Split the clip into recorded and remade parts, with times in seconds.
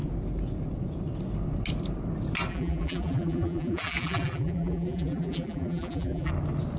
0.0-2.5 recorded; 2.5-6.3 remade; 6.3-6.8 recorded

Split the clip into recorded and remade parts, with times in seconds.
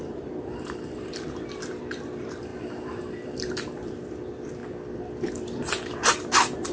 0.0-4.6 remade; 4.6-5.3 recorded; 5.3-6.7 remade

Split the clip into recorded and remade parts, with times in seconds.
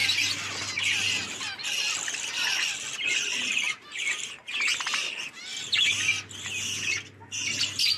0.0-8.0 recorded